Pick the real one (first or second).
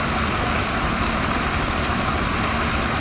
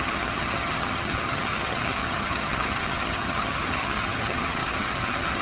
first